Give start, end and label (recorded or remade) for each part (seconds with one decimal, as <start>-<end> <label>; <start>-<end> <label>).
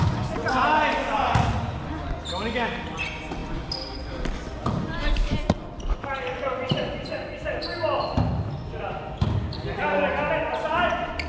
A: 0.0-11.3 recorded